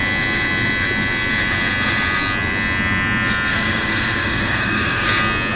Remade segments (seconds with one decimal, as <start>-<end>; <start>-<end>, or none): 3.5-5.1

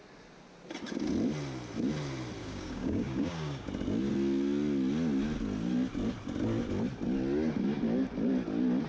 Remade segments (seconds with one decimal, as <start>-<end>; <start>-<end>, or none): 2.4-3.7

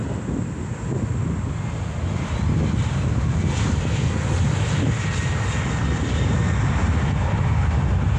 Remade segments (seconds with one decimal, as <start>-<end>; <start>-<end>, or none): none

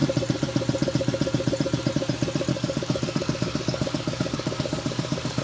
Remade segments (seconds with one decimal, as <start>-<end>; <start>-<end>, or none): 2.5-5.4

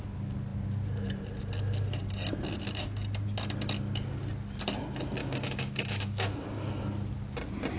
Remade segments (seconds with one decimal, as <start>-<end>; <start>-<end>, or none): 5.2-6.8

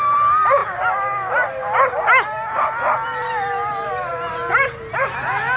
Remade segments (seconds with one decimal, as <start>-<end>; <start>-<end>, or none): none